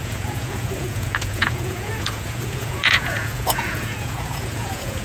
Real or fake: fake